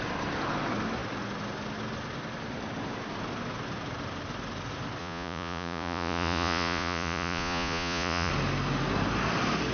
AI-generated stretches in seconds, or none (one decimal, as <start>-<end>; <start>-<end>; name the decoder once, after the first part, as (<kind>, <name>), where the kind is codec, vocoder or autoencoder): 5.0-8.3 (vocoder, Vocos)